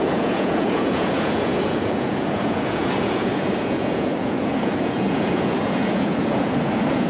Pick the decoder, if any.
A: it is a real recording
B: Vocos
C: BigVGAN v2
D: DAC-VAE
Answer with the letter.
B